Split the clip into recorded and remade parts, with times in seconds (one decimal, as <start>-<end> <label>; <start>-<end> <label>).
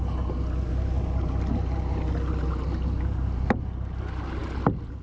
0.0-5.0 recorded